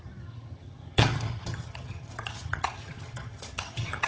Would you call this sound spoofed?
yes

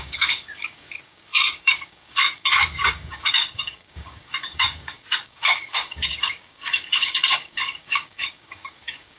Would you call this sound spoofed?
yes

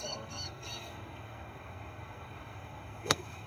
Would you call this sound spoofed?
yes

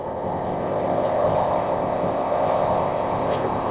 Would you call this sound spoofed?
yes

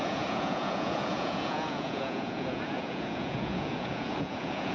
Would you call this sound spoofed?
yes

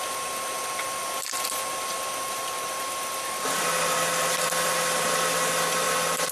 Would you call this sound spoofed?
no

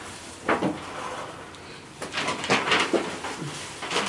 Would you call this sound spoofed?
no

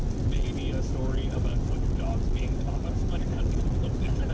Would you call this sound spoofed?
no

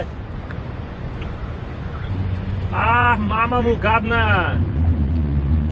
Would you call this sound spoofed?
yes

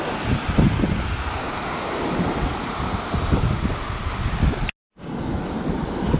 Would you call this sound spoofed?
no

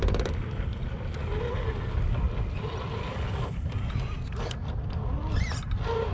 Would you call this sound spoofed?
no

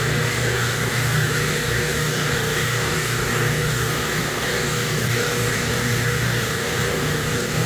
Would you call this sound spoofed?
yes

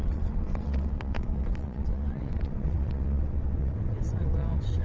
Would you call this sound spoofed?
yes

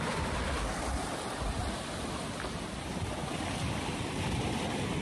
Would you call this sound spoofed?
no